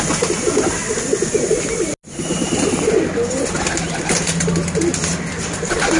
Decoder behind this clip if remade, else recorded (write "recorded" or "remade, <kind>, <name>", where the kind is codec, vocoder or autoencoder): recorded